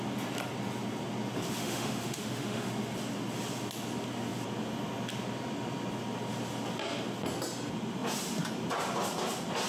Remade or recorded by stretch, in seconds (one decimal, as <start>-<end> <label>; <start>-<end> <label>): 0.0-1.6 recorded; 1.6-2.7 remade; 2.7-9.7 recorded